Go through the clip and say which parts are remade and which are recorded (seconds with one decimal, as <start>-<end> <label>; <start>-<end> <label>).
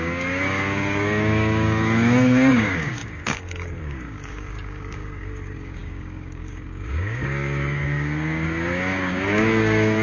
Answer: 0.0-10.0 remade